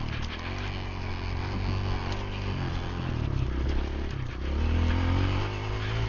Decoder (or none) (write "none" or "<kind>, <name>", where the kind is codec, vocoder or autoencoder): none